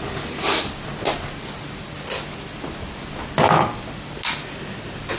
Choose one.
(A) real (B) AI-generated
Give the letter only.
A